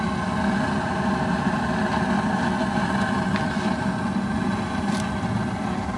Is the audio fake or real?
real